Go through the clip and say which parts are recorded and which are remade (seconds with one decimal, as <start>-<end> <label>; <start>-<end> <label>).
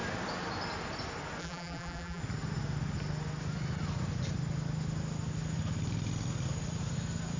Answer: 0.0-1.4 recorded; 1.4-2.2 remade; 2.2-7.4 recorded